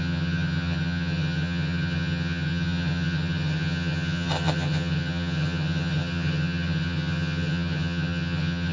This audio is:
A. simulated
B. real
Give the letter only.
A